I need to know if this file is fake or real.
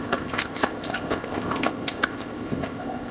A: fake